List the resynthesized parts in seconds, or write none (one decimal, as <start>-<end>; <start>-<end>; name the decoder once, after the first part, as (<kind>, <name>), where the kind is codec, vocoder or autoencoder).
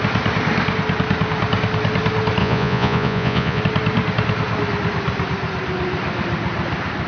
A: 2.4-3.6 (vocoder, Vocos)